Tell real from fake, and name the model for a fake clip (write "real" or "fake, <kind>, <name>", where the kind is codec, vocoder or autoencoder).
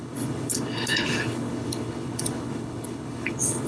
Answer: fake, codec, HILCodec